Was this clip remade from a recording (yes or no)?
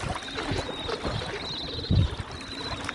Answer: no